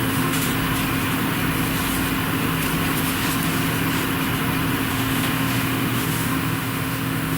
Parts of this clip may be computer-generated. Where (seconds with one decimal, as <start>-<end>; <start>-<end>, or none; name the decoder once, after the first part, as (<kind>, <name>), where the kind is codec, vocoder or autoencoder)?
0.0-0.5 (autoencoder, DAC-VAE); 4.9-7.4